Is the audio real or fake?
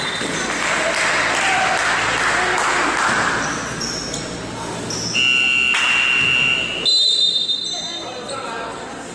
real